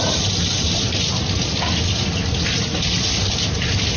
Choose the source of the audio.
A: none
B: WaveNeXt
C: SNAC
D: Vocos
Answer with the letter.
A